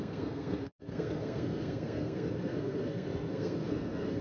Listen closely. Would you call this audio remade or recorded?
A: remade